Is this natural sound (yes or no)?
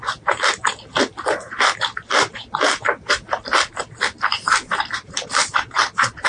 no